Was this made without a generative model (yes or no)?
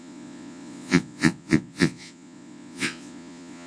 no